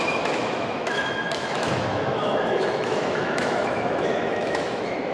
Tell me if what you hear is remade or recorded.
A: remade